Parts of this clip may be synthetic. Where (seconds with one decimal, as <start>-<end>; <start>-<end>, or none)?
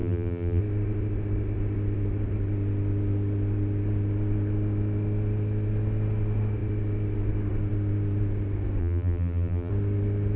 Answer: 0.0-0.6; 8.8-9.7